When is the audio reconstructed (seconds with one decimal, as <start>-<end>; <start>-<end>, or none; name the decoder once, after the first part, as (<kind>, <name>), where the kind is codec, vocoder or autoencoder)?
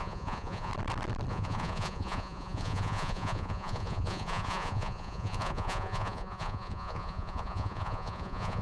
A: 0.0-0.7 (vocoder, Vocos); 1.3-8.6